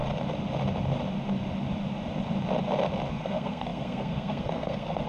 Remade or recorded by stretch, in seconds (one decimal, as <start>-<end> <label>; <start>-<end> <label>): 0.0-3.1 recorded; 3.1-5.1 remade